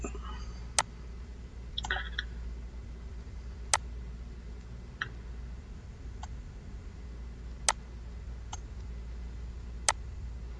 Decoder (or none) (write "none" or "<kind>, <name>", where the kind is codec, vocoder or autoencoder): none